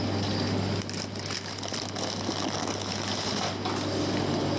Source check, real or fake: real